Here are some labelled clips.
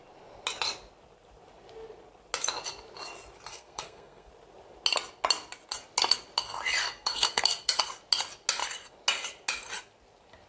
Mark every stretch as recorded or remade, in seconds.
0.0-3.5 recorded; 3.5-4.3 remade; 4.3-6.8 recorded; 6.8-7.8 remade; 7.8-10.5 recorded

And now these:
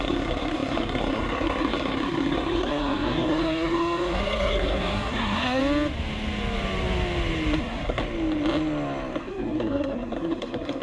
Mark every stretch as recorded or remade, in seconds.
0.0-5.6 remade; 5.6-7.6 recorded; 7.6-8.0 remade; 8.0-9.2 recorded; 9.2-10.8 remade

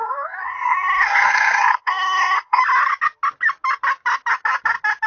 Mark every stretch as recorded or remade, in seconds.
0.0-2.6 remade; 2.6-5.1 recorded